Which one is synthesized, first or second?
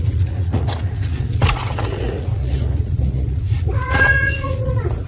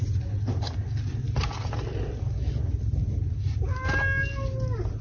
first